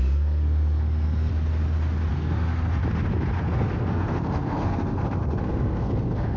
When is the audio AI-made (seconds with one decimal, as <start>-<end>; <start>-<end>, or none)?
0.0-1.3; 2.1-2.8; 3.4-6.4